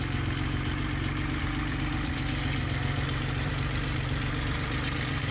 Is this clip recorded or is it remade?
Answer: remade